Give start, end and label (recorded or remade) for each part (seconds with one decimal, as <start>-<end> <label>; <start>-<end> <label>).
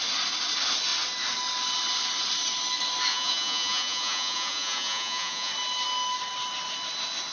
0.0-3.1 recorded; 3.1-5.5 remade; 5.5-7.3 recorded